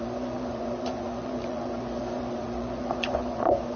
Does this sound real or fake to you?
fake